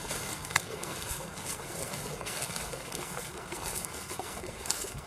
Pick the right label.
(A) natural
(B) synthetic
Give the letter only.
B